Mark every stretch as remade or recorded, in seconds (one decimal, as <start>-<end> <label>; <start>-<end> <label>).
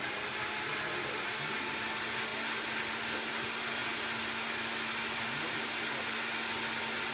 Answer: 0.0-7.1 recorded